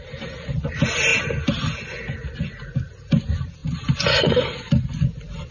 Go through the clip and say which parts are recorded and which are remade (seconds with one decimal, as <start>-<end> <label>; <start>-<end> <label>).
0.0-5.5 recorded